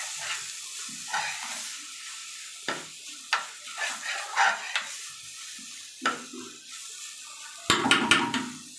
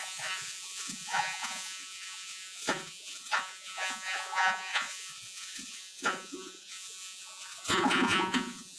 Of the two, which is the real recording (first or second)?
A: first